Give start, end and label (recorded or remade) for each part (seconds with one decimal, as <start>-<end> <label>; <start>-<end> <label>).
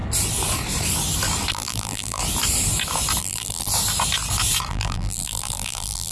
0.0-1.5 recorded; 1.5-2.2 remade; 2.2-3.2 recorded; 3.2-3.7 remade; 3.7-4.7 recorded; 4.7-6.1 remade